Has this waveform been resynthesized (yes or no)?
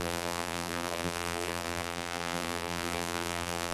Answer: yes